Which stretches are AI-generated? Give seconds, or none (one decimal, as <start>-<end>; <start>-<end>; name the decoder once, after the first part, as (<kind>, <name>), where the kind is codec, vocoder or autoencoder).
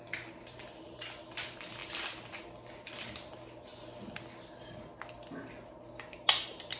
none